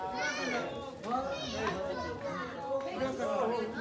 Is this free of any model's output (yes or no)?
yes